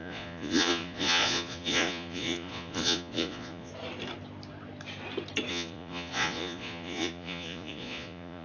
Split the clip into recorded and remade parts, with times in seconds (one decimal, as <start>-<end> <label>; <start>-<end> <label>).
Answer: 0.0-3.7 remade; 3.7-5.5 recorded; 5.5-8.4 remade